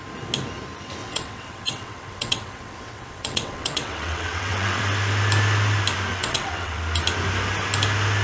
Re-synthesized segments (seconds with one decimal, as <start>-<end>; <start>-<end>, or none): 1.0-4.8; 6.1-6.8